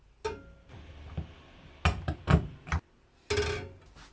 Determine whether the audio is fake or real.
real